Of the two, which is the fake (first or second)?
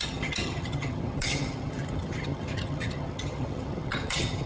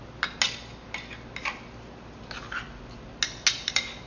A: first